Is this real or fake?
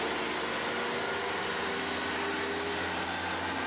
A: real